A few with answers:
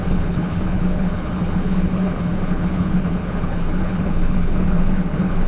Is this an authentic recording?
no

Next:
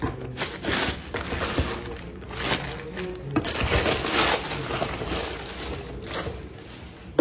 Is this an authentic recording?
yes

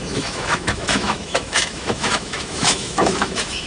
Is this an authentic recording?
no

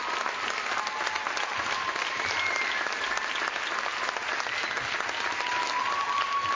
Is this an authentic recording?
yes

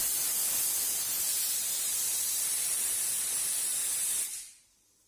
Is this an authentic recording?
yes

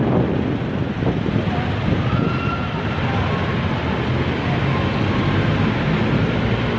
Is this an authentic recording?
yes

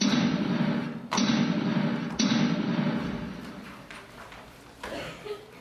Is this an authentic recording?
no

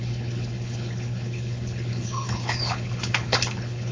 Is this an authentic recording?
no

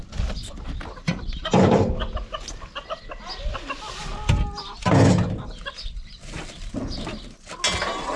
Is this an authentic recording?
yes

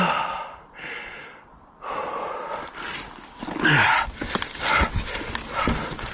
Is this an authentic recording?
yes